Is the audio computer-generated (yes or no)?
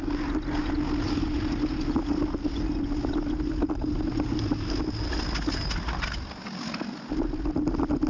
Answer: no